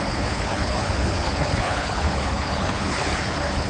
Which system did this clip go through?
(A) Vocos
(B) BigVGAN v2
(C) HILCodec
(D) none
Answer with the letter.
C